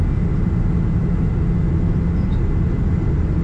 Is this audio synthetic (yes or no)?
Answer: no